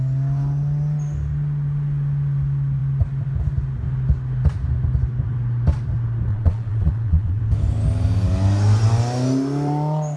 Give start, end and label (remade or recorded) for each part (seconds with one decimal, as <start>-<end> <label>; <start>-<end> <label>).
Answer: 0.0-6.3 recorded; 6.3-7.4 remade; 7.4-10.2 recorded